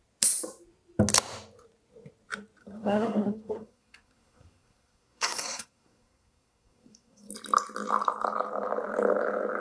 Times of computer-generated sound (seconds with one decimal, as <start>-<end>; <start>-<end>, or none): 2.6-7.3

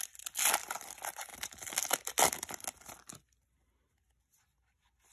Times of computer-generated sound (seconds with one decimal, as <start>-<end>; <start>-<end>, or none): none

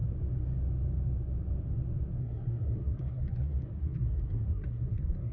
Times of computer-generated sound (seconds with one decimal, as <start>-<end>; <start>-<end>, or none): 2.2-5.3

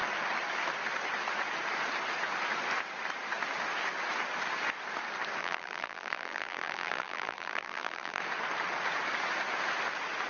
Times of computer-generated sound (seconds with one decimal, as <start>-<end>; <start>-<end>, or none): 5.4-8.2

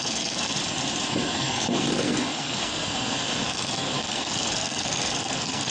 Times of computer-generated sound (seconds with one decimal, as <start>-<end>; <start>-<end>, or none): 0.0-0.6; 1.1-5.7

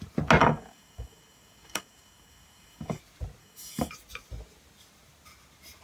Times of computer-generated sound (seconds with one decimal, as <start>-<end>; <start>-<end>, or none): 0.4-3.0; 3.4-3.9

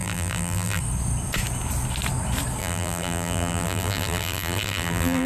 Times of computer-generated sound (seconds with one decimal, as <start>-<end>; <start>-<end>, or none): 0.0-0.8; 2.6-5.3

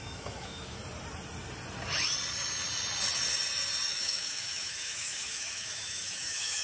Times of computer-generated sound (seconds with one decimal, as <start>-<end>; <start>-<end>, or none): 0.0-0.8; 3.9-6.6